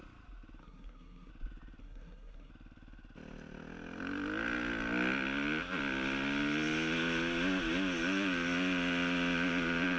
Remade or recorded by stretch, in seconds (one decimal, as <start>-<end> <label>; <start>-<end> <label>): 0.0-0.6 recorded; 0.6-1.3 remade; 1.3-1.8 recorded; 1.8-2.5 remade; 2.5-10.0 recorded